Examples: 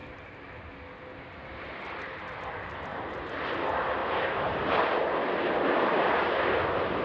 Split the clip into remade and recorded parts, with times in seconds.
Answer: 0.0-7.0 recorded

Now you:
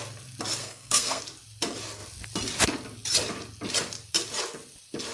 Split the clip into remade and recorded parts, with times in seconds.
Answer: 0.0-0.6 recorded; 0.6-1.2 remade; 1.2-5.1 recorded

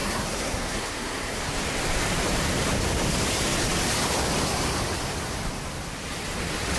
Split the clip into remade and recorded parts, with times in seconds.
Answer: 0.0-1.4 remade; 1.4-6.8 recorded

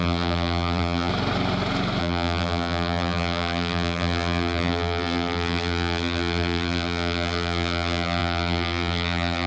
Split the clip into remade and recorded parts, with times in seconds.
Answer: 0.0-1.1 remade; 1.1-2.0 recorded; 2.0-9.5 remade

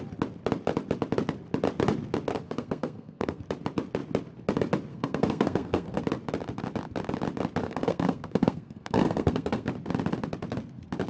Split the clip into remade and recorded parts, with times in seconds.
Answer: 0.0-2.3 recorded; 2.3-3.4 remade; 3.4-4.9 recorded; 4.9-6.0 remade; 6.0-7.6 recorded; 7.6-9.7 remade; 9.7-11.1 recorded

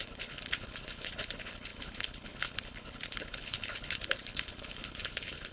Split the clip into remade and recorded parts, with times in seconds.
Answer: 0.0-5.5 remade